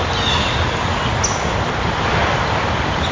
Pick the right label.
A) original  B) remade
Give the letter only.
A